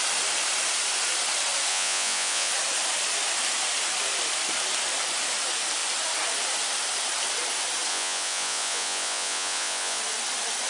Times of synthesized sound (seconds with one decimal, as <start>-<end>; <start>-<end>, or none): 1.7-2.5; 7.9-10.0

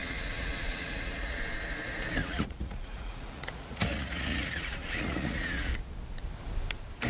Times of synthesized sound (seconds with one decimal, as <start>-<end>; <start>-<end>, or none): 0.0-1.4; 2.2-5.7